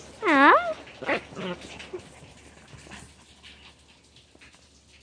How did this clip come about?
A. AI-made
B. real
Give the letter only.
B